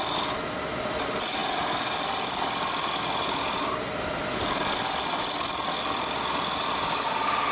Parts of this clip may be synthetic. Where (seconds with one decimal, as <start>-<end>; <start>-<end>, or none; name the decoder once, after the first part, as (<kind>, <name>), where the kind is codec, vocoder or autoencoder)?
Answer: none